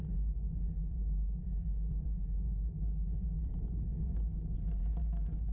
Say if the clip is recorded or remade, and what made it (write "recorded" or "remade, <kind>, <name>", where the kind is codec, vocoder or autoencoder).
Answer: recorded